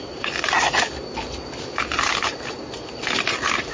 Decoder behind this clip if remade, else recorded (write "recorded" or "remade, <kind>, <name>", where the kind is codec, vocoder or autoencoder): remade, vocoder, BigVGAN v2